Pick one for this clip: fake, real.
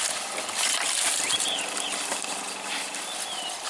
real